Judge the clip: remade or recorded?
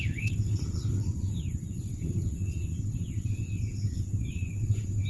remade